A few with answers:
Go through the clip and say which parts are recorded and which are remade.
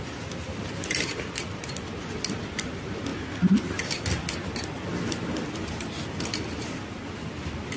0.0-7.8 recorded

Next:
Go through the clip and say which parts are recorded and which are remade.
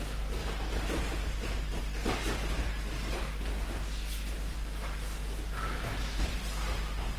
0.0-7.2 recorded